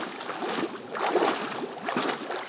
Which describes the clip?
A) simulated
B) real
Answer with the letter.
B